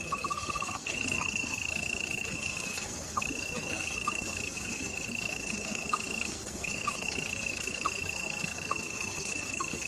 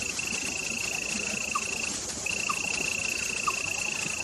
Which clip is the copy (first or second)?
first